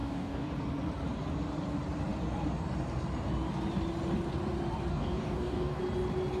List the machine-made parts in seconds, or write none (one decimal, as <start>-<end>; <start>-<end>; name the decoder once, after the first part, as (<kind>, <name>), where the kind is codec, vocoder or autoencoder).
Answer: 0.0-0.5 (codec, DAC); 4.9-5.8